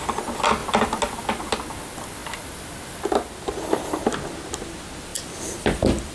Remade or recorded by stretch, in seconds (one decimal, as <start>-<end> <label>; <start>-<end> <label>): 0.0-5.1 recorded; 5.1-6.1 remade

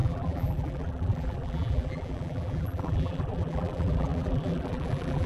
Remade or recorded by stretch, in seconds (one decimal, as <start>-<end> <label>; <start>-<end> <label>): 0.0-5.3 remade

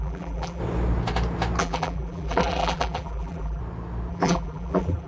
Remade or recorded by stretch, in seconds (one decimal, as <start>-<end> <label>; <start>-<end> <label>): 0.0-0.6 remade; 0.6-1.6 recorded; 1.6-3.6 remade; 3.6-4.1 recorded; 4.1-5.1 remade